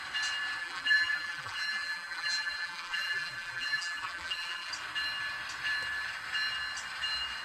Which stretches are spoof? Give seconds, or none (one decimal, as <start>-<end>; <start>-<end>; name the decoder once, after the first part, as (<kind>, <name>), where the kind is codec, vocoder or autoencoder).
0.6-4.7 (vocoder, BigVGAN v2)